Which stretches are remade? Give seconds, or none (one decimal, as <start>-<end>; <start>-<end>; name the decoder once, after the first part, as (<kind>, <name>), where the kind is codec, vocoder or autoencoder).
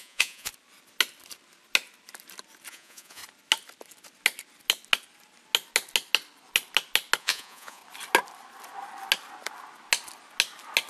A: 0.0-0.5 (vocoder, Vocos); 2.7-3.2; 7.2-7.8